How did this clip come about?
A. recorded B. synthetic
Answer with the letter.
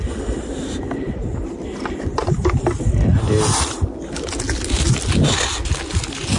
A